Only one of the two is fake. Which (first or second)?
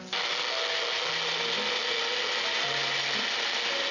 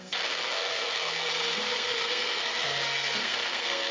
second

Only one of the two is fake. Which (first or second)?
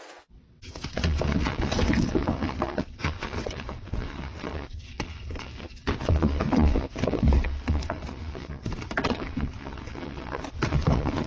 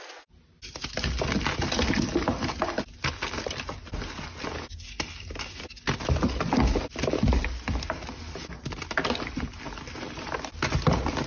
first